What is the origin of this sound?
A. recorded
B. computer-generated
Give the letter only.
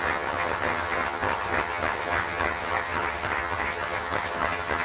B